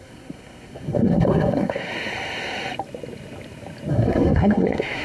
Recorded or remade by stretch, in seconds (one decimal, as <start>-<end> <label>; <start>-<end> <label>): 0.0-1.9 remade; 1.9-3.9 recorded; 3.9-5.0 remade